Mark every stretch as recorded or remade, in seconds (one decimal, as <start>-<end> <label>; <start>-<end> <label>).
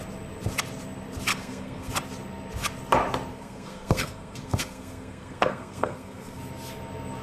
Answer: 0.0-1.3 recorded; 1.3-1.9 remade; 1.9-3.3 recorded; 3.3-6.4 remade; 6.4-7.2 recorded